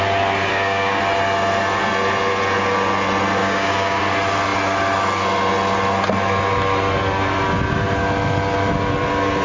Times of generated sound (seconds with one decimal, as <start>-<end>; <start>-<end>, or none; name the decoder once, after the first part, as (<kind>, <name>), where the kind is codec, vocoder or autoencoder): 0.5-1.0 (codec, DAC); 3.4-4.0